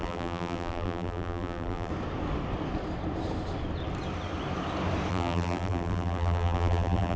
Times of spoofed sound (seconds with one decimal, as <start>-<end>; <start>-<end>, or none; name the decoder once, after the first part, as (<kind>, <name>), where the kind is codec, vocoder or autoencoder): 0.0-1.9 (vocoder, BigVGAN v2); 5.1-7.2